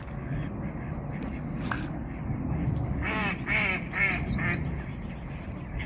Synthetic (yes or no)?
no